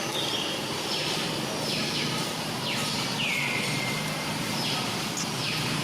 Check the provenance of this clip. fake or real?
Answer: real